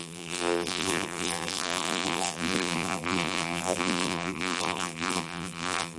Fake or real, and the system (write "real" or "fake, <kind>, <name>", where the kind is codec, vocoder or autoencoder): fake, vocoder, BigVGAN v2